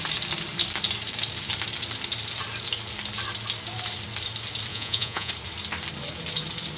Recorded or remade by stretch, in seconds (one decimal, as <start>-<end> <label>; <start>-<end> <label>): 0.0-4.7 recorded; 4.7-5.3 remade; 5.3-6.8 recorded